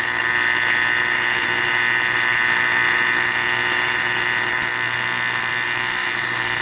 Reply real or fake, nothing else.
real